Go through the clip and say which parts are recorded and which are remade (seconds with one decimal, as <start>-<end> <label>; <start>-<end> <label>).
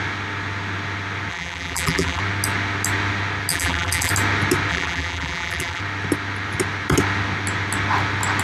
0.0-1.3 recorded; 1.3-2.2 remade; 2.2-3.5 recorded; 3.5-4.1 remade; 4.1-4.7 recorded; 4.7-5.8 remade; 5.8-8.4 recorded